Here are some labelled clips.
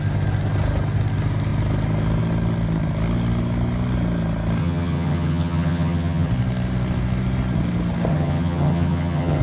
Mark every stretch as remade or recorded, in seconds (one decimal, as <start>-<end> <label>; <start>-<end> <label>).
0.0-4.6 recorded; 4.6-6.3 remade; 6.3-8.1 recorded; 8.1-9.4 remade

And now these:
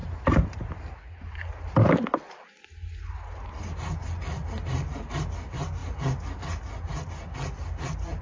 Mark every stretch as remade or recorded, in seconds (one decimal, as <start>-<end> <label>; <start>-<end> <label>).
0.0-8.2 recorded

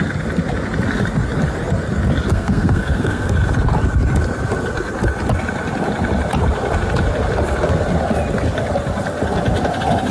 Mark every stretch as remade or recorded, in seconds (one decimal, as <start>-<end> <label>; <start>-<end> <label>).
0.0-2.3 recorded; 2.3-3.3 remade; 3.3-10.1 recorded

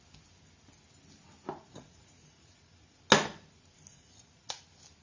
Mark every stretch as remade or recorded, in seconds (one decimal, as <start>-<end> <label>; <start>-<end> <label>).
0.0-1.6 recorded; 1.6-3.0 remade; 3.0-3.9 recorded; 3.9-4.6 remade; 4.6-5.0 recorded

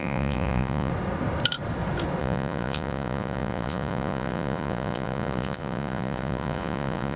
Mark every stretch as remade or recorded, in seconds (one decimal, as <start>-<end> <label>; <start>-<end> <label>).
0.0-0.9 remade; 0.9-2.2 recorded; 2.2-7.2 remade